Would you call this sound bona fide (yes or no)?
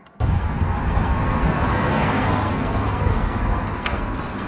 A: no